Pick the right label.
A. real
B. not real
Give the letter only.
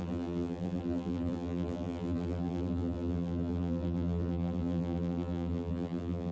B